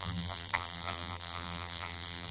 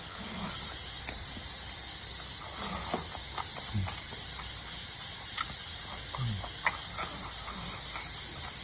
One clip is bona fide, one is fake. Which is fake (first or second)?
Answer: first